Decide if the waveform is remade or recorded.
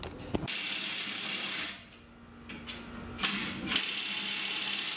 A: recorded